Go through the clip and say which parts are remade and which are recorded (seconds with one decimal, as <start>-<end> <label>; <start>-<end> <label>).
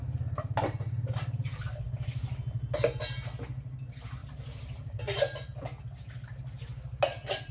0.0-7.5 recorded